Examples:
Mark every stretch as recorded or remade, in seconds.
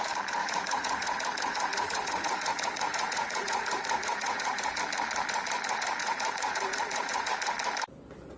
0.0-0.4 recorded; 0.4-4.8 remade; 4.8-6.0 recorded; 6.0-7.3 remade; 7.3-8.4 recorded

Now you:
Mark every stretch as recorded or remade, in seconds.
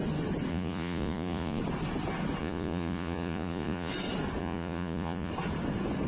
0.0-0.5 recorded; 0.5-1.6 remade; 1.6-2.4 recorded; 2.4-3.9 remade; 3.9-4.4 recorded; 4.4-5.3 remade; 5.3-6.1 recorded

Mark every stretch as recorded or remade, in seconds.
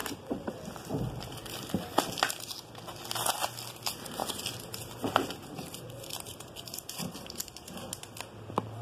0.0-0.5 remade; 0.5-8.8 recorded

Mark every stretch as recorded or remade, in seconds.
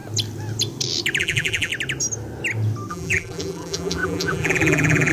0.0-1.2 recorded; 1.2-1.7 remade; 1.7-2.9 recorded; 2.9-5.1 remade